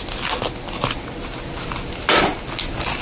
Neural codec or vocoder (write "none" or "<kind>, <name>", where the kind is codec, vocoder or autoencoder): none